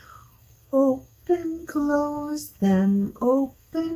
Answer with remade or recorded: remade